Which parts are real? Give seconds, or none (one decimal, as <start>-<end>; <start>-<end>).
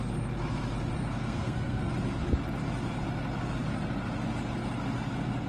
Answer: 0.0-1.2; 1.9-5.5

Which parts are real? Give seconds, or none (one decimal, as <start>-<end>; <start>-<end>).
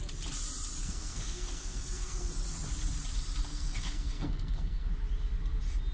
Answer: 0.0-0.8; 2.3-3.5; 4.9-5.9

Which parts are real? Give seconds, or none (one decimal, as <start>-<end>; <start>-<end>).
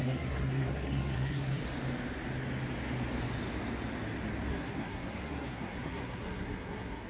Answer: 1.6-4.5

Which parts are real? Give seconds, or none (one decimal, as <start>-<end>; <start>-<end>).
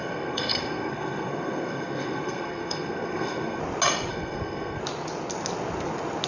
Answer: 3.6-4.1; 4.8-6.3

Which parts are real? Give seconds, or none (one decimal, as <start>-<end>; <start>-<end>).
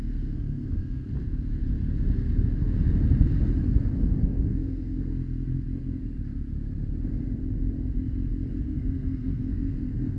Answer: 1.1-4.2; 5.1-8.6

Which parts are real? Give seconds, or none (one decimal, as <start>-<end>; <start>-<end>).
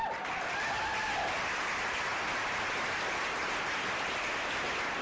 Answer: 0.0-5.0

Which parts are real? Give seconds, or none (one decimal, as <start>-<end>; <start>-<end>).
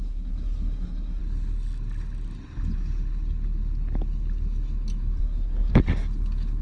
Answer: 1.2-5.2; 5.7-6.6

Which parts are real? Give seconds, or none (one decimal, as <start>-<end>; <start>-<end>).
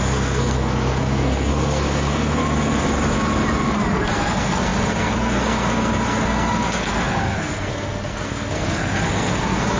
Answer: 2.4-3.9